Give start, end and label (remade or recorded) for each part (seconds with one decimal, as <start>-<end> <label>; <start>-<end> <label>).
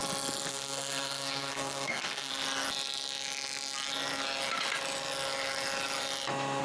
0.0-0.5 recorded; 0.5-2.3 remade; 2.3-6.6 recorded